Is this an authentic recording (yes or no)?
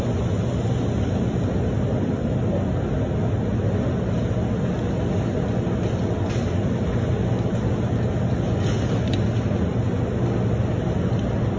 yes